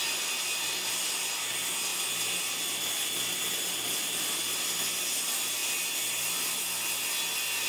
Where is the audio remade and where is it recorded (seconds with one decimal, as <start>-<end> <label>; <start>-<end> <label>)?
0.0-7.7 recorded